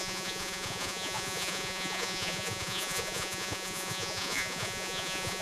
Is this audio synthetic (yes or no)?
yes